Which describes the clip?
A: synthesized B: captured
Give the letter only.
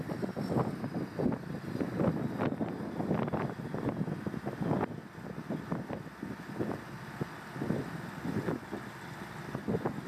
B